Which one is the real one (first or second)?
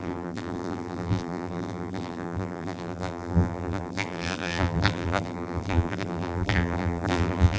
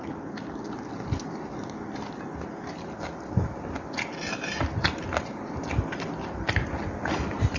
second